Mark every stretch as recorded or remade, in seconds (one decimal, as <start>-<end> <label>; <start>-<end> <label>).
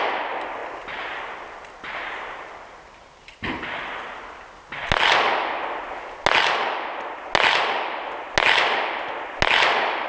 0.0-10.1 recorded